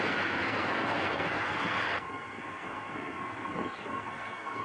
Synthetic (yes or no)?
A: yes